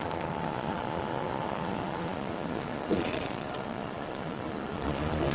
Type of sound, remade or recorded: remade